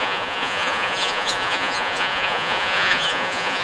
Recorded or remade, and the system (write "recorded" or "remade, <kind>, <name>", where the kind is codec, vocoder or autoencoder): remade, vocoder, Vocos